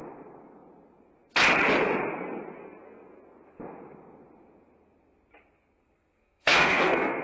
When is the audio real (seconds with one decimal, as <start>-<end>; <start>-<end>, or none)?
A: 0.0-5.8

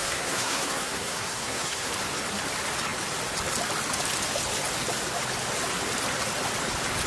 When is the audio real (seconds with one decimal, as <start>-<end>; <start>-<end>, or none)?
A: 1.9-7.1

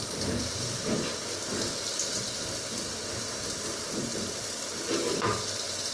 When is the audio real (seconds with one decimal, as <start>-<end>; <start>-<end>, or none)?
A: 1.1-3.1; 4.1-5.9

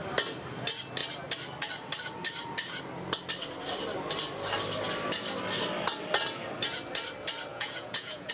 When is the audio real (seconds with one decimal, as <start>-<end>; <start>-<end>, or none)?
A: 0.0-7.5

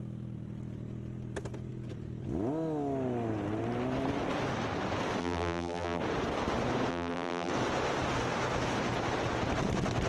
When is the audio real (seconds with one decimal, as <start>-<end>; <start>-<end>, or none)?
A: 0.0-5.2; 6.0-6.9; 7.5-10.1

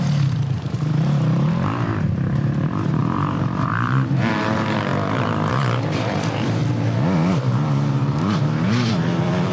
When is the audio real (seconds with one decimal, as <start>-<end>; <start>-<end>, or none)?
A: 6.6-7.3

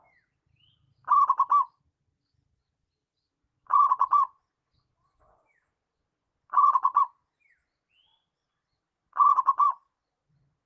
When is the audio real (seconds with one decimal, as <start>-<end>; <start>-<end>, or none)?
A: 0.0-3.1; 7.0-7.6

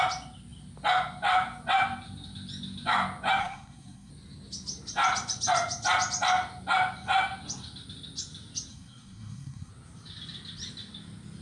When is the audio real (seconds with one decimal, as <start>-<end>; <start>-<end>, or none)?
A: 0.0-3.4; 4.1-8.7; 9.7-11.4